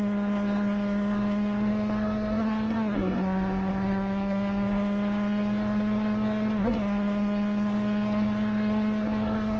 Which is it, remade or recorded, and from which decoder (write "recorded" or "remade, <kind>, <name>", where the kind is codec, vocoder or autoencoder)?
remade, codec, SNAC